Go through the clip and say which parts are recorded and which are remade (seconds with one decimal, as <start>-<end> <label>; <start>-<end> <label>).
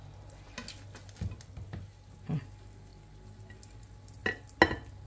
0.0-5.1 recorded